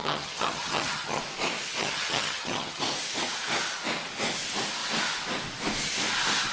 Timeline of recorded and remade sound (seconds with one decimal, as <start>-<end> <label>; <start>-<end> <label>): 0.0-1.2 remade; 1.2-1.8 recorded; 1.8-2.8 remade; 2.8-6.5 recorded